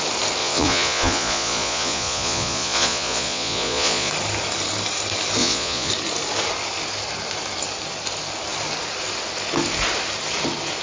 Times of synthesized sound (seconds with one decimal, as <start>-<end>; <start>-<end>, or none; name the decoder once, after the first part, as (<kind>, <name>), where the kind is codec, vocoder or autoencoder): 0.4-4.1 (vocoder, Vocos); 5.4-5.9